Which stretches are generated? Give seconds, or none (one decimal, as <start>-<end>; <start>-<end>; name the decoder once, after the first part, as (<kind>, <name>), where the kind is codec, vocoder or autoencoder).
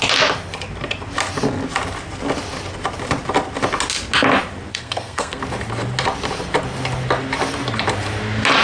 4.7-5.4 (codec, SNAC)